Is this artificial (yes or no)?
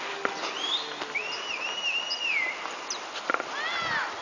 no